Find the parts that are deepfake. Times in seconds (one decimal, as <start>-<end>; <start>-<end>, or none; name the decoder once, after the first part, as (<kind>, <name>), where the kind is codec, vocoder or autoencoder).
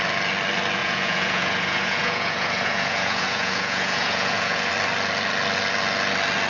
0.8-4.7 (vocoder, Vocos)